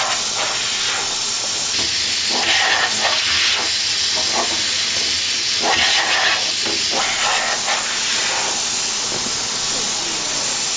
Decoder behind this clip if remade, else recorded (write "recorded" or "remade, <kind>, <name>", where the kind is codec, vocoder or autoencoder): recorded